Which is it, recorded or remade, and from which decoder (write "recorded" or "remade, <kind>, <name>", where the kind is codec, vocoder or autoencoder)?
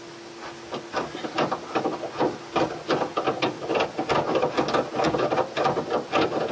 recorded